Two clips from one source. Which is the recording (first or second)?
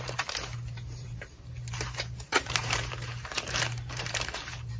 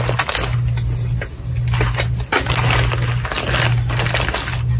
second